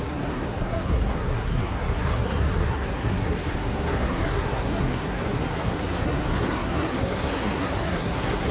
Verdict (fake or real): fake